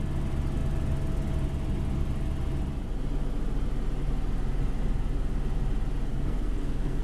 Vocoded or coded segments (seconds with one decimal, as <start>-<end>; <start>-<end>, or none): 6.1-7.0